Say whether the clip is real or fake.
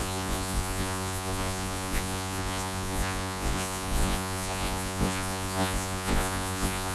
fake